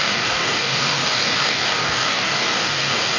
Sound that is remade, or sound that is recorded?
remade